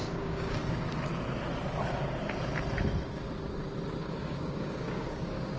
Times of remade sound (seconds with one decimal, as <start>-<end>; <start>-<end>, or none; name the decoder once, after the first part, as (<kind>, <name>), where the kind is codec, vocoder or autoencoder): 0.0-0.6 (codec, DAC); 4.0-5.6